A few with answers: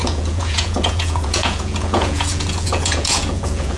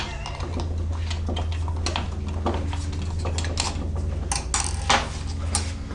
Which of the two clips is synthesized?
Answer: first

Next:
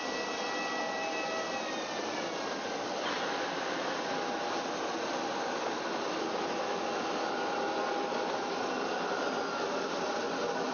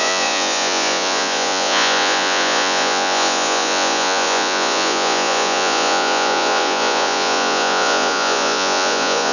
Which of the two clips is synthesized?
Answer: second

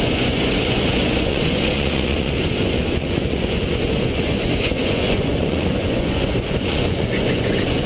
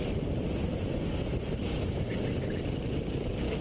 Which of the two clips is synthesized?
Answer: first